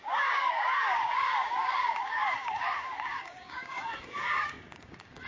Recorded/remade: remade